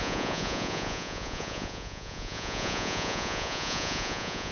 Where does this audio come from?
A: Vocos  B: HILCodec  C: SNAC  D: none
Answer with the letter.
A